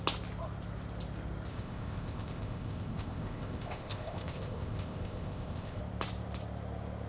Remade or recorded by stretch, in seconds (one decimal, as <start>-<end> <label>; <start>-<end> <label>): 0.0-1.5 recorded; 1.5-5.8 remade; 5.8-7.1 recorded